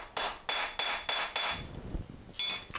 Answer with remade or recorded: recorded